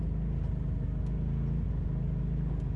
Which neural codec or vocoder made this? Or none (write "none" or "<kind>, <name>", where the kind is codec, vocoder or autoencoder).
none